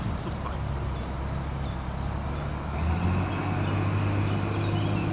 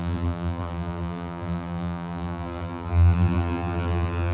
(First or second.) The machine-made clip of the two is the second